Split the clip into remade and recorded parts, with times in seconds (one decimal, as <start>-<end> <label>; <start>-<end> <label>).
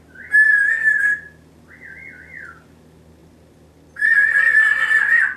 0.0-5.4 recorded